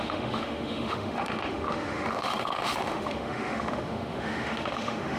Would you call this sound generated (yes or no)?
yes